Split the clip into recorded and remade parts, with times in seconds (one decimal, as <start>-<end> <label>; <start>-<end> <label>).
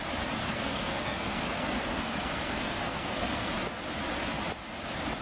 0.0-0.4 recorded; 0.4-3.5 remade; 3.5-5.2 recorded